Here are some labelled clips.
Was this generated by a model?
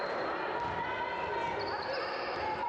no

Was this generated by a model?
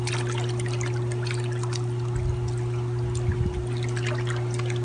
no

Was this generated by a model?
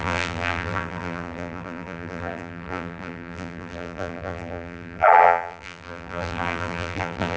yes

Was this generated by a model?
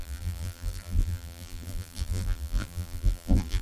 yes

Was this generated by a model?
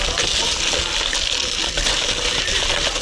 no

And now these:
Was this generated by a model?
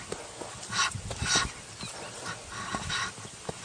no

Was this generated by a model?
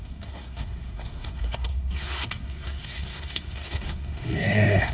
yes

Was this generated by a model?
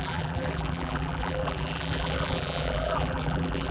yes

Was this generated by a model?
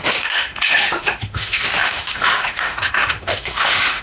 yes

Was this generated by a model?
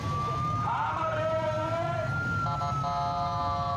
no